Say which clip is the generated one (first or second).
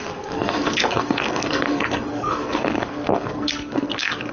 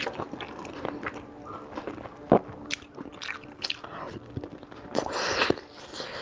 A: first